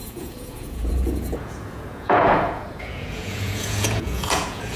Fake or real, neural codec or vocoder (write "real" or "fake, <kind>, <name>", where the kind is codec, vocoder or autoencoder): fake, vocoder, Vocos